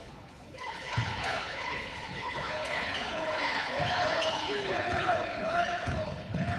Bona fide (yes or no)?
no